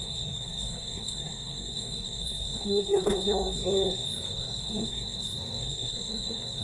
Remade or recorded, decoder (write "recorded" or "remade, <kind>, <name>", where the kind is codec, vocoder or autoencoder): remade, codec, SNAC